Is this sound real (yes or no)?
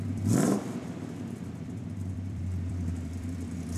no